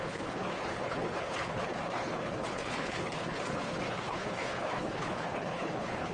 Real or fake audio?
fake